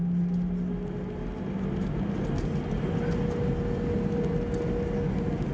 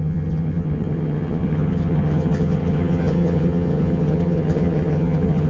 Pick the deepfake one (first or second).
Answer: second